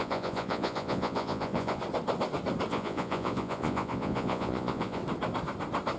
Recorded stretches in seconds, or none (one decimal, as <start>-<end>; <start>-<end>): 1.8-2.7; 5.0-6.0